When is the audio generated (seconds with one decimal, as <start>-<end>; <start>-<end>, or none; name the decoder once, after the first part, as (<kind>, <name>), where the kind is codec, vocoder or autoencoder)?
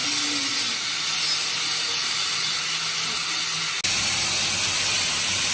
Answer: none